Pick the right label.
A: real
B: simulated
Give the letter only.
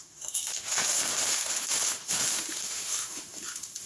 B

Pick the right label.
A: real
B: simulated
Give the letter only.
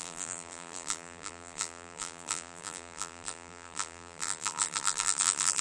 B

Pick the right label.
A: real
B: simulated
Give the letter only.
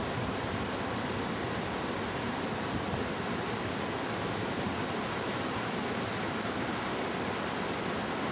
A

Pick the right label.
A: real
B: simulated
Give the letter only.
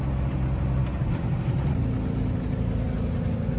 A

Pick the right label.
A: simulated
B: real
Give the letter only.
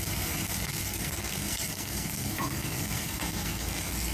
A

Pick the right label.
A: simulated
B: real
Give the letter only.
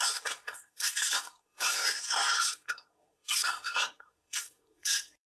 A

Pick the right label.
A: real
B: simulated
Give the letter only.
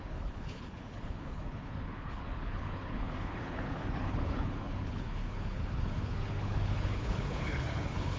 B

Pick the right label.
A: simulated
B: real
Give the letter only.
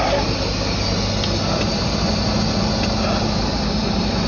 B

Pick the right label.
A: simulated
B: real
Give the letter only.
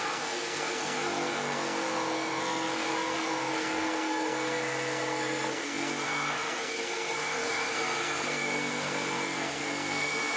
A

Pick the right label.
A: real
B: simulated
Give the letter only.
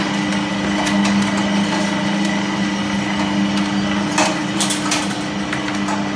A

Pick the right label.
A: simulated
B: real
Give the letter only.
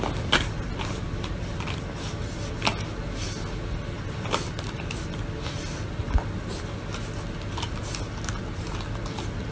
B